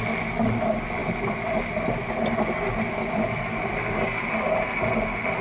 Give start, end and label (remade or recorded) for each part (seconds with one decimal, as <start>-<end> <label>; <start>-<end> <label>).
0.0-5.4 recorded